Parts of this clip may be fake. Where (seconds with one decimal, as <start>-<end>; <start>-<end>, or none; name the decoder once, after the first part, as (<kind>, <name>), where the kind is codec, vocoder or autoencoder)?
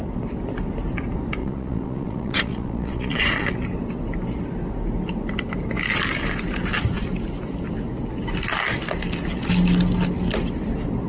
1.4-3.5 (vocoder, Vocos)